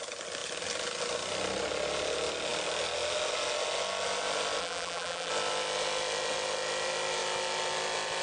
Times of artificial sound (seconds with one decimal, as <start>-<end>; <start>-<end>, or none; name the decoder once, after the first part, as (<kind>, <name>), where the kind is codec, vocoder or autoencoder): 4.6-5.3 (vocoder, BigVGAN v2)